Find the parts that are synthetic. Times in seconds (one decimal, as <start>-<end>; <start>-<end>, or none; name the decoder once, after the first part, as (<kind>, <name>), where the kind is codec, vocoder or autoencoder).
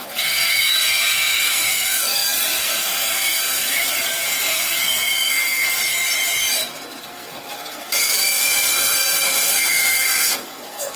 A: 0.0-5.8 (codec, SNAC); 7.0-11.0